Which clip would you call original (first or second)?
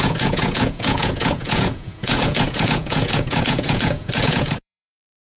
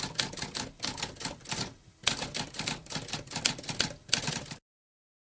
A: second